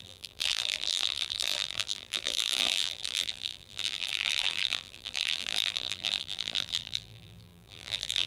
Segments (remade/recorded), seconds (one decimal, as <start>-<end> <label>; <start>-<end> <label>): 0.0-8.3 remade